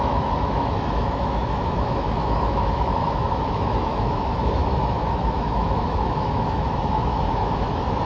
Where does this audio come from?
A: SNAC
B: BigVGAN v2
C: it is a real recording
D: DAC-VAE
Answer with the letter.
D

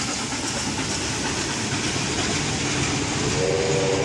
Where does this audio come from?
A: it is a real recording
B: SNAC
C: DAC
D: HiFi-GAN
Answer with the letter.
A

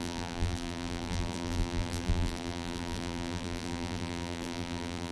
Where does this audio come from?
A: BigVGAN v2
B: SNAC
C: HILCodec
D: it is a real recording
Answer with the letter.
A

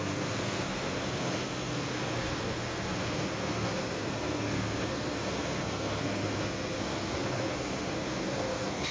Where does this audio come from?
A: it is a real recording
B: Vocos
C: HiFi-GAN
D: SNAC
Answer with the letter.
D